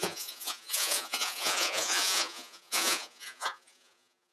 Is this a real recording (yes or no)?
no